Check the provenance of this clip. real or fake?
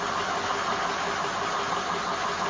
real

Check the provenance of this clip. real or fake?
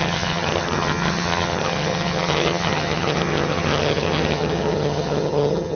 fake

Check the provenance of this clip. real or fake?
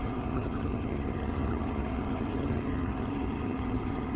fake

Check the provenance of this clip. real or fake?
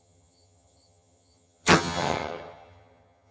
fake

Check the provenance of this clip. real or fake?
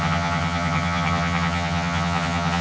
fake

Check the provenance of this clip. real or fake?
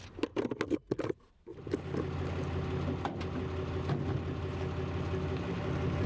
real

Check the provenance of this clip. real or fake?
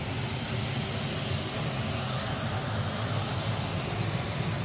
real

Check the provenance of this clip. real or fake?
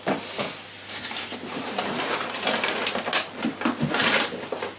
real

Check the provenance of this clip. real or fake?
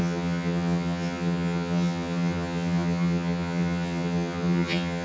fake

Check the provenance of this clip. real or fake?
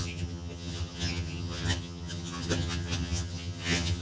fake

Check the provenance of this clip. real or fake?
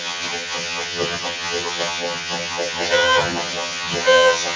fake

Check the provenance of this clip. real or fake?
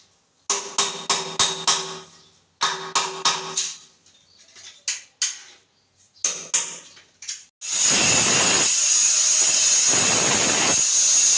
real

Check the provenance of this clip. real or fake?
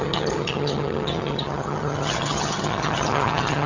fake